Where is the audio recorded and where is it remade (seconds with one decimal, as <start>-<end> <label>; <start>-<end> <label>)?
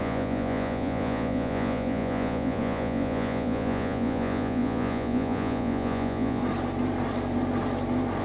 0.0-6.4 remade; 6.4-8.2 recorded